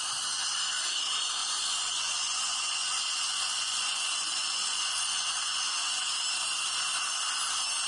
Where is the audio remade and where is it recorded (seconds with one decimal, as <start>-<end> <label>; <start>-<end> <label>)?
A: 0.0-1.4 recorded; 1.4-6.1 remade; 6.1-7.9 recorded